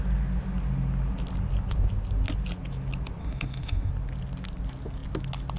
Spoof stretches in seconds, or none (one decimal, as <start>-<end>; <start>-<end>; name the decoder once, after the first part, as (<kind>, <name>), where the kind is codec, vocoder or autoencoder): 3.2-3.9 (autoencoder, DAC-VAE)